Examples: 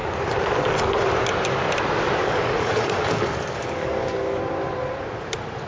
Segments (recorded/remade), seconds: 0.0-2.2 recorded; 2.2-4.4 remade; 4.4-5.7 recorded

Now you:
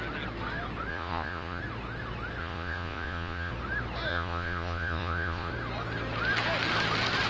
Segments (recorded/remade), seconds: 0.0-0.9 recorded; 0.9-1.6 remade; 1.6-2.4 recorded; 2.4-3.5 remade; 3.5-4.1 recorded; 4.1-5.5 remade; 5.5-7.3 recorded

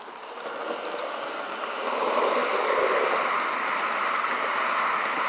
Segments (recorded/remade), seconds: 0.0-1.0 remade; 1.0-1.7 recorded; 1.7-2.4 remade; 2.4-5.3 recorded

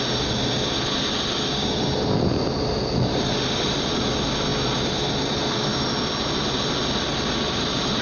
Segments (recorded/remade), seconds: 0.0-8.0 recorded

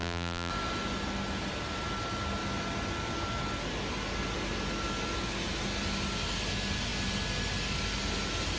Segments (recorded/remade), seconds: 0.0-0.5 remade; 0.5-8.6 recorded

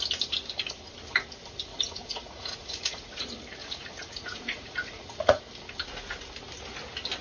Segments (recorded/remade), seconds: 0.0-1.7 recorded; 1.7-3.2 remade; 3.2-3.6 recorded; 3.6-5.4 remade; 5.4-7.2 recorded

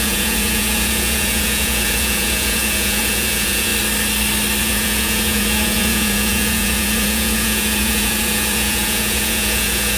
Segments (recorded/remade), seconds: 0.0-3.7 remade; 3.7-4.6 recorded; 4.6-10.0 remade

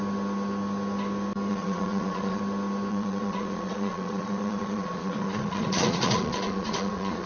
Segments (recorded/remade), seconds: 0.0-1.5 recorded; 1.5-2.4 remade; 2.4-2.9 recorded; 2.9-7.3 remade